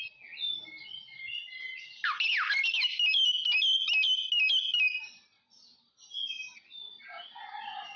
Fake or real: real